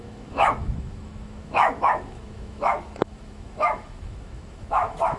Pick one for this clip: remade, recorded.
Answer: remade